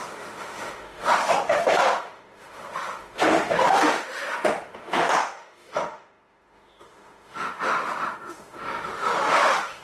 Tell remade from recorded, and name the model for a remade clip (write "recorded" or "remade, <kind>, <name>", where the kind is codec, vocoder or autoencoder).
remade, autoencoder, DAC-VAE